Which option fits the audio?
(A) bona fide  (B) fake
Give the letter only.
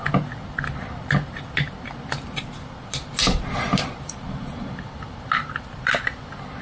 A